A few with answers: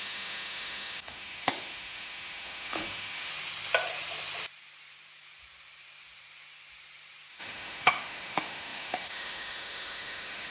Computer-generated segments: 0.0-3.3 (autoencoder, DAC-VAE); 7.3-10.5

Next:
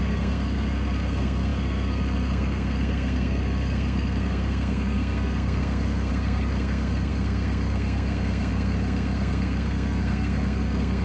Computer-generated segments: 0.0-11.0 (codec, SNAC)

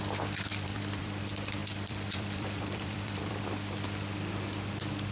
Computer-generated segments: 0.5-1.2 (vocoder, BigVGAN v2); 1.6-3.4

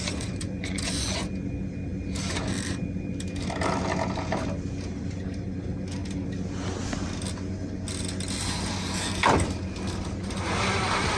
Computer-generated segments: 0.0-1.3 (vocoder, Vocos)

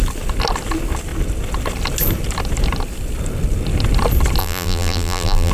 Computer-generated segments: 4.4-5.5 (vocoder, BigVGAN v2)